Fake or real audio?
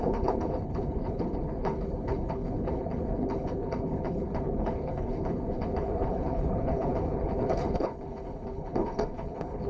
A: fake